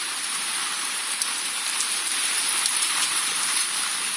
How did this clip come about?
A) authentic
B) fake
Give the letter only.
B